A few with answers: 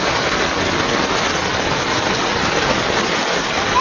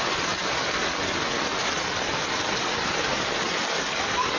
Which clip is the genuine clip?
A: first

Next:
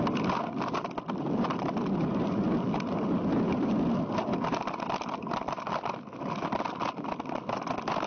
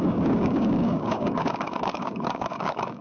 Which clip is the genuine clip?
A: first